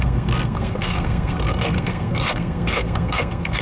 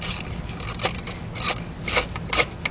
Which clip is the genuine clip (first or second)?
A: second